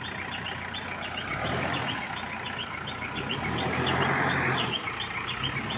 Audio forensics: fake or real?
real